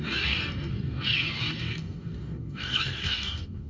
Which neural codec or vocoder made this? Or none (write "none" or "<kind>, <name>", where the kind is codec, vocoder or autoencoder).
codec, DAC